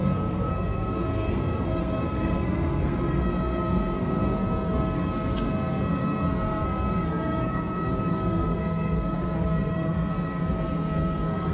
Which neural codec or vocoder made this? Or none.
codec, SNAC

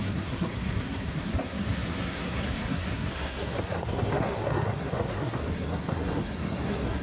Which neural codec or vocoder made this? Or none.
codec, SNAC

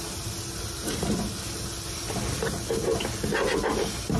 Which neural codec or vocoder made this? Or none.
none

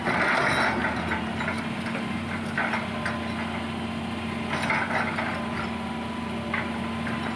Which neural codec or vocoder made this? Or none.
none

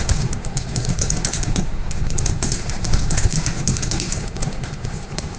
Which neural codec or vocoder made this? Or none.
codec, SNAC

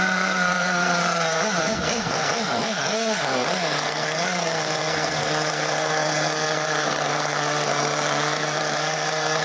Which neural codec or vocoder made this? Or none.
codec, SNAC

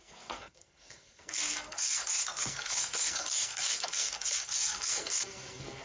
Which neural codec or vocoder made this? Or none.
codec, SNAC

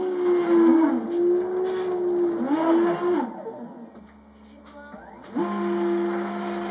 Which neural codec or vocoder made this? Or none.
none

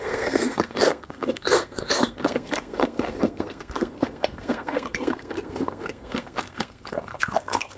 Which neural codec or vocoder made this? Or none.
codec, SNAC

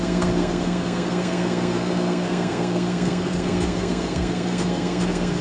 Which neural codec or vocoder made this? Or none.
codec, SNAC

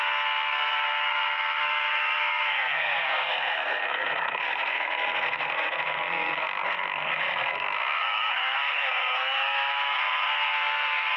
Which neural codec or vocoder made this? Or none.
codec, SNAC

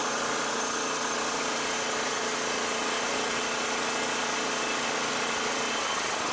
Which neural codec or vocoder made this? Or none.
none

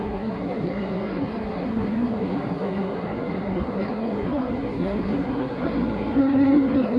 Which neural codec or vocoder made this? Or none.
codec, SNAC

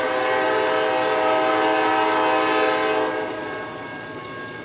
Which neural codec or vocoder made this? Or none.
none